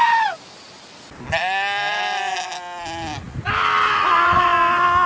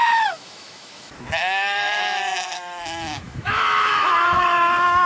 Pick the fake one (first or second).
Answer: second